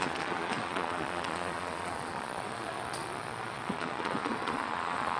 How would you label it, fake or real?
fake